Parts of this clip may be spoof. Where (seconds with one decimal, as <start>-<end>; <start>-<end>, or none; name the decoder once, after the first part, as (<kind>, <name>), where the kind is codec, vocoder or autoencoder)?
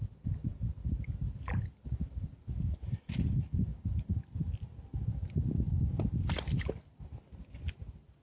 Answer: none